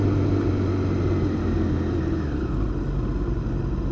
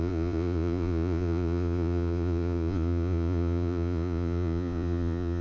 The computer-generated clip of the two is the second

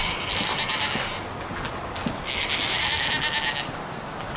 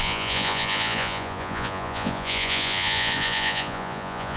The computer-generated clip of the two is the second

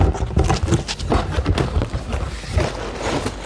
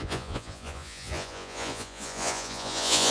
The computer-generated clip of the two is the second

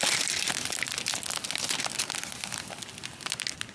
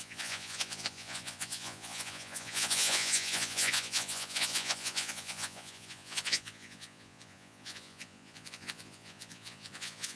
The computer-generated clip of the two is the second